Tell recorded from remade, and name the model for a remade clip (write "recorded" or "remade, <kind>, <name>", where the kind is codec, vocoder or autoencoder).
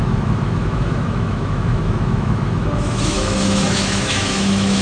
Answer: remade, autoencoder, DAC-VAE